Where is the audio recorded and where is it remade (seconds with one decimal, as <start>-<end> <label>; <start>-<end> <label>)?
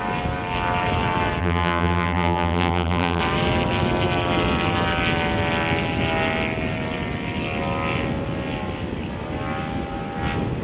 0.0-1.4 recorded; 1.4-3.2 remade; 3.2-10.6 recorded